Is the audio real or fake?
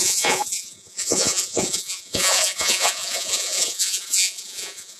fake